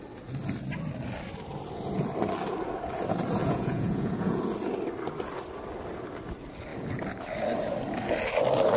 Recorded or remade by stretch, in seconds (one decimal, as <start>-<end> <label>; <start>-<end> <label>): 0.0-3.4 recorded; 3.4-4.4 remade; 4.4-8.8 recorded